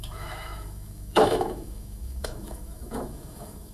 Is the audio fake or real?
fake